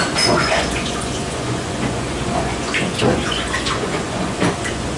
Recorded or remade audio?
remade